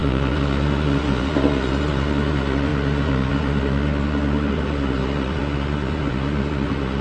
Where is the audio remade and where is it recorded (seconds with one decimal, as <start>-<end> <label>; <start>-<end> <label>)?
0.0-7.0 remade